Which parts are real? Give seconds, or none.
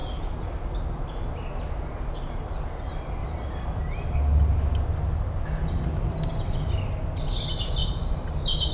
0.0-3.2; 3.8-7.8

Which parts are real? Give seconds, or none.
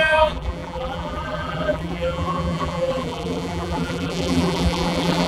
none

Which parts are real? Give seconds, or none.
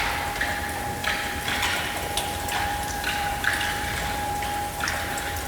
0.0-1.0; 4.3-5.5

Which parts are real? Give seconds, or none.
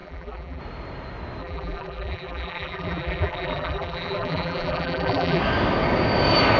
0.6-1.4; 5.4-6.6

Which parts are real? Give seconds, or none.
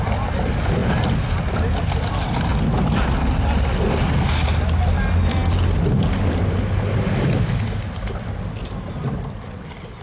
0.0-10.0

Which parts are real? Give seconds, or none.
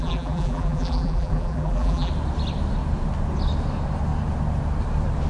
2.1-5.3